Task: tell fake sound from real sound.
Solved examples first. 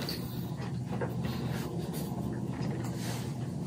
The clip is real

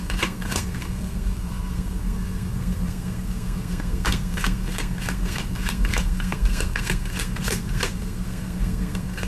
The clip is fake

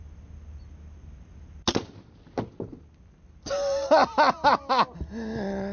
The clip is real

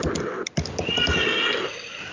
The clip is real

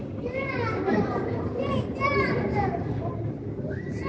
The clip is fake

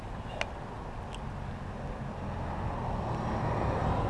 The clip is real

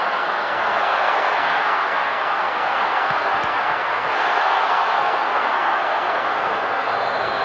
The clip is fake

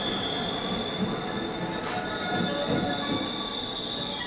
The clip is real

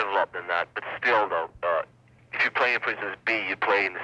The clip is real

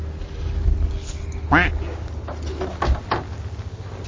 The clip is real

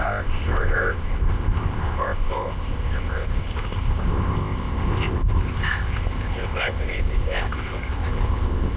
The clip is fake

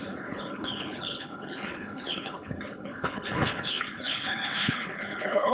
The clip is fake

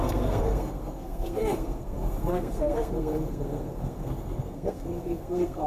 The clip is fake